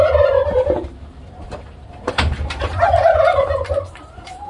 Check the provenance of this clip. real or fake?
fake